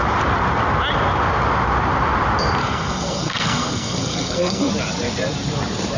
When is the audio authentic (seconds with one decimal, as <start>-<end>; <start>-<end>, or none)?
0.0-2.6; 4.7-6.0

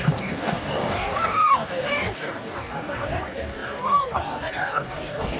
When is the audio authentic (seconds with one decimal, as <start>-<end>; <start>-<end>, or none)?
none

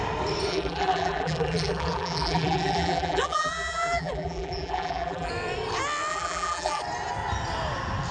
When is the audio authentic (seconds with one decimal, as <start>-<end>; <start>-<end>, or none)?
0.0-0.5; 5.3-6.1; 6.8-8.1

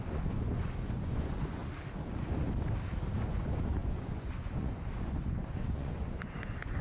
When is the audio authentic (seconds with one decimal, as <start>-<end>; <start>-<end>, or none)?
1.6-3.2

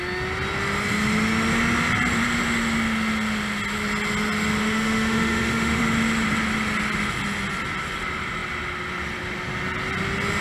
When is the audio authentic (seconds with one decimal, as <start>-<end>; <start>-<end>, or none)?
0.0-4.6; 5.8-10.4